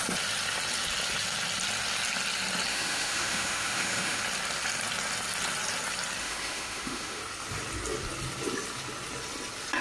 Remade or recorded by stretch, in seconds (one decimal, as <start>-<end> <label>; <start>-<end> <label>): 0.0-2.7 recorded; 2.7-4.2 remade; 4.2-6.2 recorded; 6.2-7.2 remade; 7.2-9.8 recorded

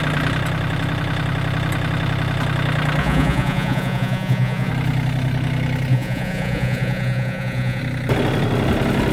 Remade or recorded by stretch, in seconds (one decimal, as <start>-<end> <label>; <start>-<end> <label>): 0.0-3.0 recorded; 3.0-4.7 remade; 4.7-5.9 recorded; 5.9-7.8 remade; 7.8-9.1 recorded